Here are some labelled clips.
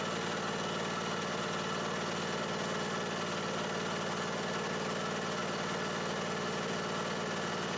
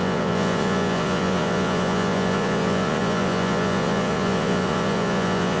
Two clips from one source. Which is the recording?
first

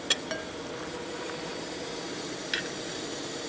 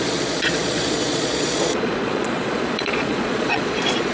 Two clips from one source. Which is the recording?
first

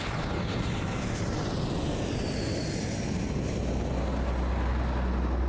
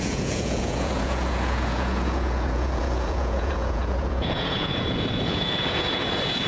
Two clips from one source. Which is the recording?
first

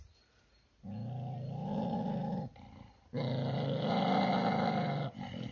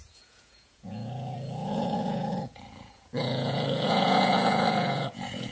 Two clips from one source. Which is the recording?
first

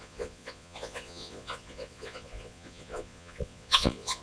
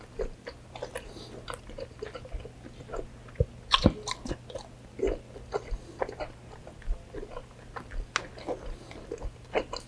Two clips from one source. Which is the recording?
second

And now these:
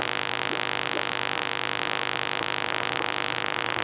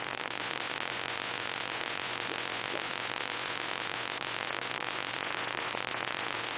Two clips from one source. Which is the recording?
first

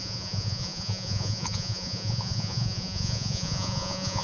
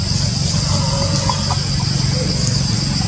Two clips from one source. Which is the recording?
second